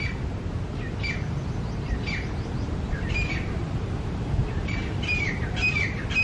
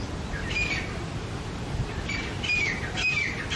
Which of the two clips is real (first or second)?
second